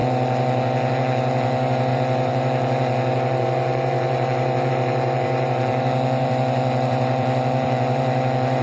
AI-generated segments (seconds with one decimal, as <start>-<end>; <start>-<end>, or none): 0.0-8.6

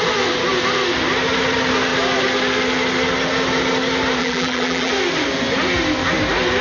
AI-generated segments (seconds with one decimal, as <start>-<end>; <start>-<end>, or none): 4.2-4.9

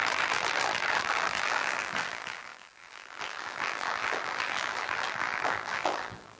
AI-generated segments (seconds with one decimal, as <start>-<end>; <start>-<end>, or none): 0.0-6.4

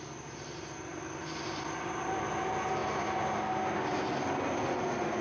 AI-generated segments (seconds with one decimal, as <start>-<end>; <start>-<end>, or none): 0.9-2.2

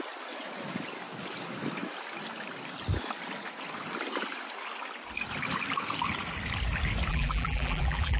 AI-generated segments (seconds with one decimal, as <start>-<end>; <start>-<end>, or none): 7.1-8.2